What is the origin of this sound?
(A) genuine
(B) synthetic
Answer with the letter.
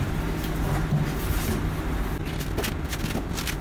A